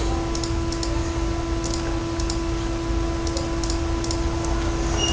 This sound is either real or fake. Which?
real